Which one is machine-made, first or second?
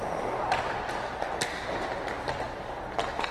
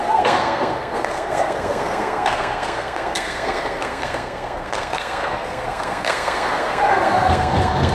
second